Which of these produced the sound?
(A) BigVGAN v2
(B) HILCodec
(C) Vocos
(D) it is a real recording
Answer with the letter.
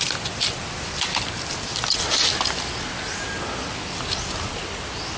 D